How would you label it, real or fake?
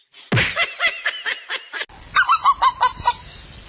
real